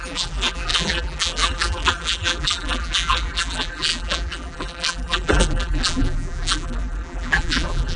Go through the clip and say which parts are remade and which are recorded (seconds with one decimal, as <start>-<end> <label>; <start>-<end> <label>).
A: 0.0-8.0 remade